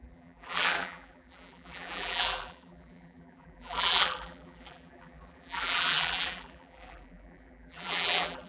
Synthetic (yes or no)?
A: yes